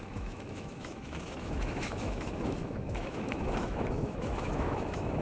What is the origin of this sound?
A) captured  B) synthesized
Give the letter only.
B